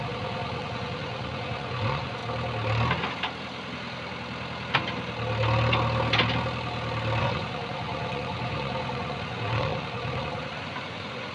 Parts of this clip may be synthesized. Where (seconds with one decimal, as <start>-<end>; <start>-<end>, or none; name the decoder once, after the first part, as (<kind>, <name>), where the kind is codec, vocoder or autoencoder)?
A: 0.0-2.2 (vocoder, Vocos); 7.2-11.3